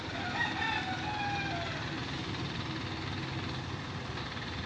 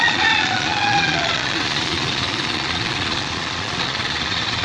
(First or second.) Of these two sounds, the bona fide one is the first